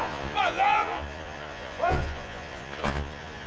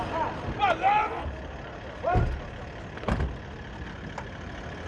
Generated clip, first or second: first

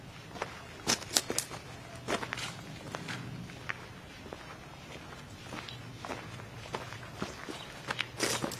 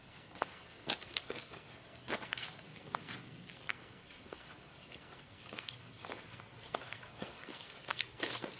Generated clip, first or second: second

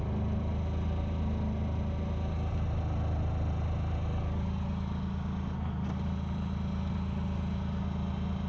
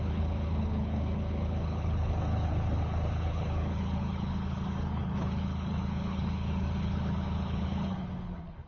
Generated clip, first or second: second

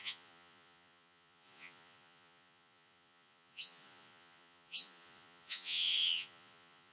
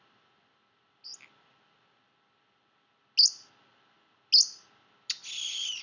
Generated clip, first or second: first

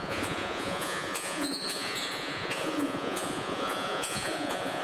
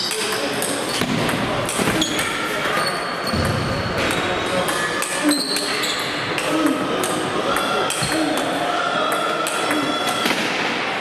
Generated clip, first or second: first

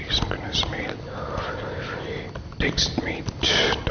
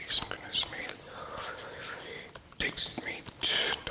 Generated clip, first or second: second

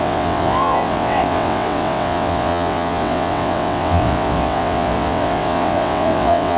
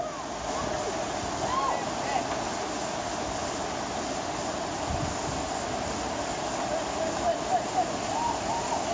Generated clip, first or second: first